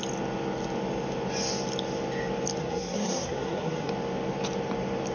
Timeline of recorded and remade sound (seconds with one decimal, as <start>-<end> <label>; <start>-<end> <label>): 0.0-2.6 recorded; 2.6-3.9 remade; 3.9-5.1 recorded